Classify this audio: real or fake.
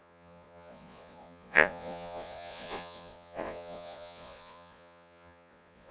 fake